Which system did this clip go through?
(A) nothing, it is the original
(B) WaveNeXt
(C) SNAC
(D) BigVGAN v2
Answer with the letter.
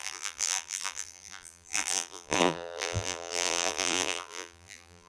D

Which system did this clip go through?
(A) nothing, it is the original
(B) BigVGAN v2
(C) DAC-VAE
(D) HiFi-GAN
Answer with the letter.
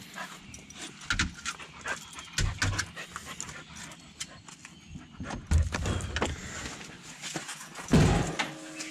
A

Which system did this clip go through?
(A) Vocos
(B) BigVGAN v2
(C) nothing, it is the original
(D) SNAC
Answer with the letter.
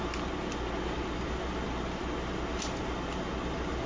C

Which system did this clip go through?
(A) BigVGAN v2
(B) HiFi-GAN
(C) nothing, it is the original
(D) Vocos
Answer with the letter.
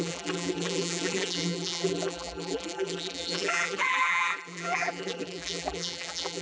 A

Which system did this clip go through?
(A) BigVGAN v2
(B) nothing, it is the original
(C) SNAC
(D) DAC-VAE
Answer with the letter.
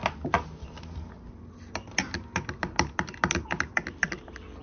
B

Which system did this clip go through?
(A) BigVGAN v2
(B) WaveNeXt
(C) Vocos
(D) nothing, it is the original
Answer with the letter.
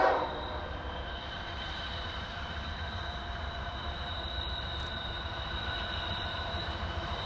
A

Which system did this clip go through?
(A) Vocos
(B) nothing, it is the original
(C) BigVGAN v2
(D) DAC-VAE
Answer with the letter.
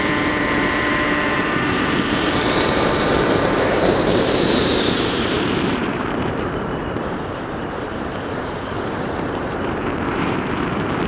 C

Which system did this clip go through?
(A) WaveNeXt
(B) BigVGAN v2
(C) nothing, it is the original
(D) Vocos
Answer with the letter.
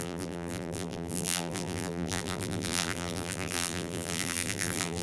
B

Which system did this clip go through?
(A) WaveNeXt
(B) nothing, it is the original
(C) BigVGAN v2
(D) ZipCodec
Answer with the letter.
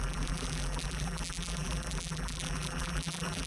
C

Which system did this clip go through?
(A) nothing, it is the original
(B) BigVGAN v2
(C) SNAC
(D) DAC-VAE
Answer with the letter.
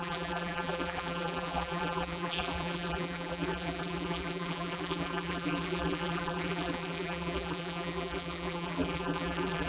B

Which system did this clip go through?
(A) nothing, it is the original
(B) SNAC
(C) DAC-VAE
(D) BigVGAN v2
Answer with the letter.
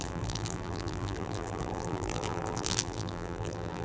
D